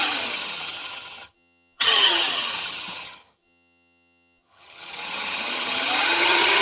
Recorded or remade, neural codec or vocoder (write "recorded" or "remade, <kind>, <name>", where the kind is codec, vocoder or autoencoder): remade, vocoder, HiFi-GAN